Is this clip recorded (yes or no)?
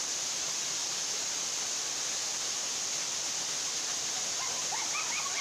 yes